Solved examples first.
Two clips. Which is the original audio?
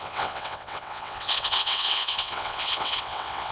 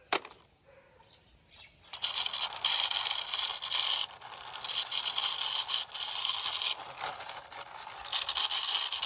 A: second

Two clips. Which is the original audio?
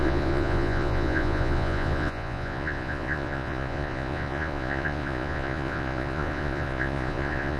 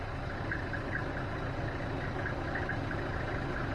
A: second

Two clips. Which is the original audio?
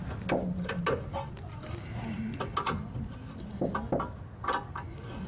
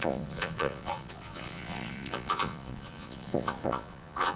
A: first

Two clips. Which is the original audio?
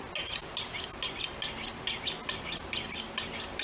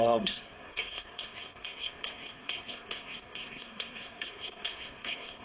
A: first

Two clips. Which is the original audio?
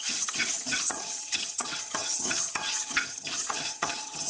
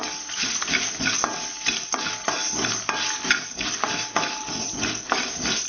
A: second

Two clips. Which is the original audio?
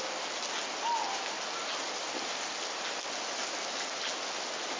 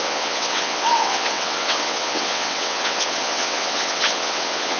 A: first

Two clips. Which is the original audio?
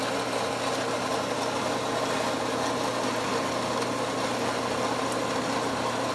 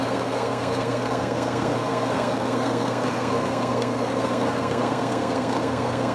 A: first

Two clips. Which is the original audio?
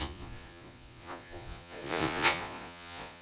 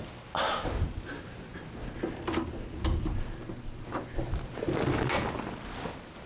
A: second